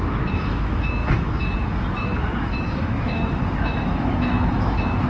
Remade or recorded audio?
remade